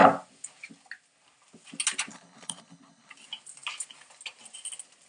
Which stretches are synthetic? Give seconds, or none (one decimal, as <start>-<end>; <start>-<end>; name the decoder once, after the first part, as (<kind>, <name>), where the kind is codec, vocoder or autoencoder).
2.1-3.1 (codec, HILCodec)